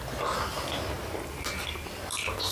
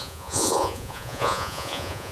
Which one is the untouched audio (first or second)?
first